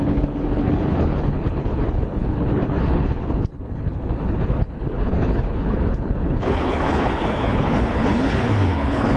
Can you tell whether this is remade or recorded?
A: remade